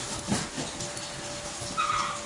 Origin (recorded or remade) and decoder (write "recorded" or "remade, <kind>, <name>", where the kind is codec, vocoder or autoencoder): recorded